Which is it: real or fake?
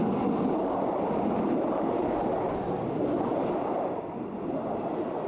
real